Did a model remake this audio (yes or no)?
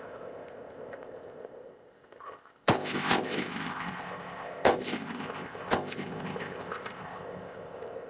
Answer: yes